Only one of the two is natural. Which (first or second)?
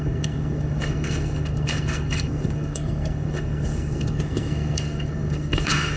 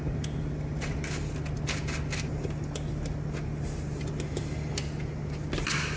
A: second